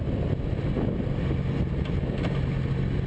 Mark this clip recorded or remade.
recorded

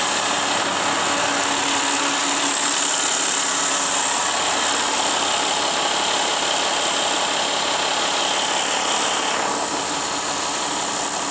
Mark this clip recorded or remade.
recorded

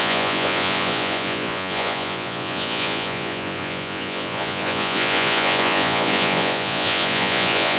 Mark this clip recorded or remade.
remade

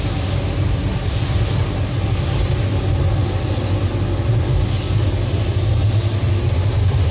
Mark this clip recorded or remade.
recorded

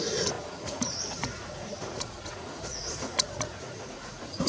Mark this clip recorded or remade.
remade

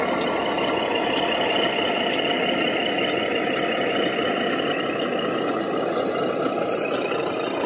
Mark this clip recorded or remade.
recorded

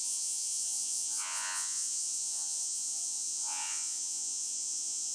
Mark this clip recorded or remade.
remade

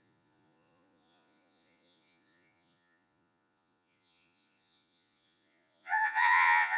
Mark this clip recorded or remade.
remade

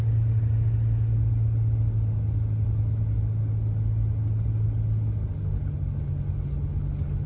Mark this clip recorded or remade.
recorded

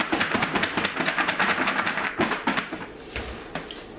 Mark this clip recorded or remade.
recorded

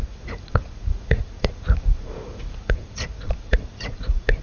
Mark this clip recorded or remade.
remade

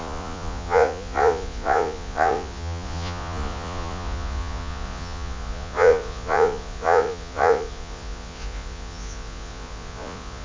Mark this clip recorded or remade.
remade